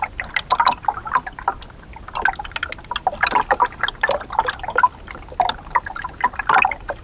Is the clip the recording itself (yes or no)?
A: yes